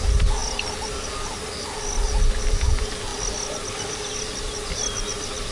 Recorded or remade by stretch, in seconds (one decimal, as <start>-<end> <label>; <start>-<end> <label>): 0.0-5.5 recorded